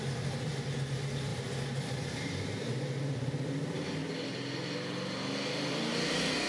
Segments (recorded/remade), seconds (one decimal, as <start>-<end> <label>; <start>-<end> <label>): 0.0-4.0 remade; 4.0-5.7 recorded; 5.7-6.5 remade